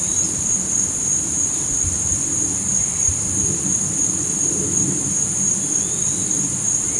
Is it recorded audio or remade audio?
remade